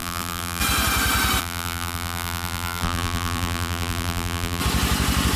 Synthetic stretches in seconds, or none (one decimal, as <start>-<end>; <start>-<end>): 0.0-0.6; 1.4-4.6